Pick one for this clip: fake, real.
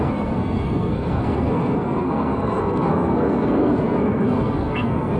fake